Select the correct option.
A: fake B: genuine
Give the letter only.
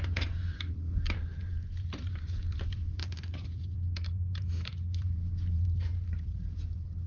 A